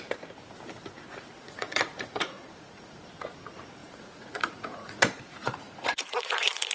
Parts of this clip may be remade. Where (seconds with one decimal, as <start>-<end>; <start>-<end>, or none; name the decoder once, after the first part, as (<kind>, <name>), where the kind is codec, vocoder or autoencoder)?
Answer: 1.3-3.0 (vocoder, Vocos); 3.8-6.7